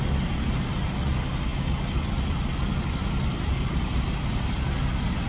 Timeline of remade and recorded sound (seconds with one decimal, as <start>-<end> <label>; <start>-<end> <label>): 0.0-5.3 recorded